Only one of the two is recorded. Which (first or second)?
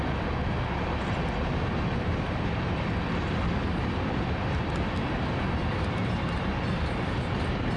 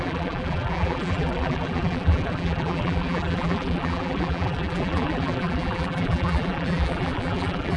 first